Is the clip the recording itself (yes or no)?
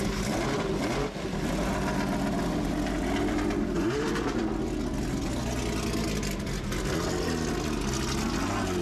yes